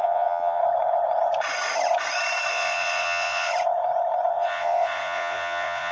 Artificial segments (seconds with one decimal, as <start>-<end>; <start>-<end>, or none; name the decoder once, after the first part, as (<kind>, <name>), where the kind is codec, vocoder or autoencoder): 0.0-0.6 (vocoder, Vocos); 2.5-3.5; 4.3-5.9